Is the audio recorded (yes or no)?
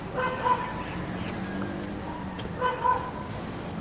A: yes